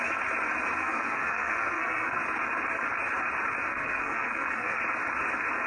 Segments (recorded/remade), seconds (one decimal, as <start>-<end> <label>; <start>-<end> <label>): 0.0-0.8 recorded; 0.8-2.2 remade; 2.2-3.7 recorded; 3.7-4.8 remade; 4.8-5.7 recorded